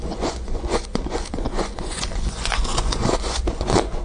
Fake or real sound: fake